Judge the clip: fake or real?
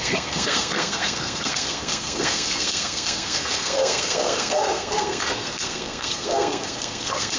fake